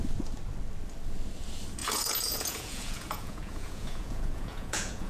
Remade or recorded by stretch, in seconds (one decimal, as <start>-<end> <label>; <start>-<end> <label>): 0.0-1.8 recorded; 1.8-5.1 remade